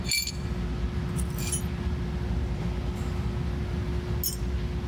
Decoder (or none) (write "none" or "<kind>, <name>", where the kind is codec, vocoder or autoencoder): none